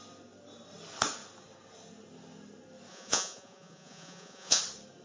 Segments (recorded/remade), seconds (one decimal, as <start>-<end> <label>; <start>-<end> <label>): 0.0-2.9 recorded; 2.9-4.6 remade; 4.6-5.0 recorded